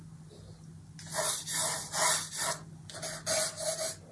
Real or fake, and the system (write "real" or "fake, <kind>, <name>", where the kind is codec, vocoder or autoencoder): real